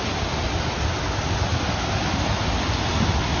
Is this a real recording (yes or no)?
yes